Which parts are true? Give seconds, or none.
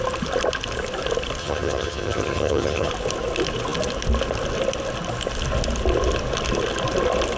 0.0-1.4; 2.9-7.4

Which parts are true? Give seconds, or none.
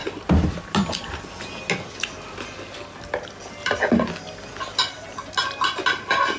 0.0-6.4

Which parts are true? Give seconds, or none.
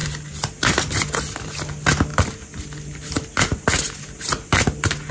0.0-5.1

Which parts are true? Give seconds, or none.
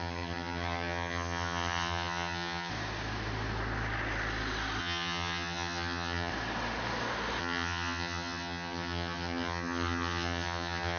2.7-4.8; 6.3-7.4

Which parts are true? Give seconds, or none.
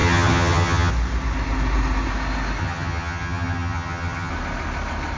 0.9-2.6; 4.3-5.2